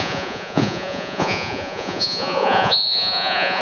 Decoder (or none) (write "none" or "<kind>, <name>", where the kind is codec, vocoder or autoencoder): vocoder, Vocos